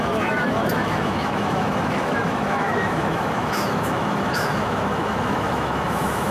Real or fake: fake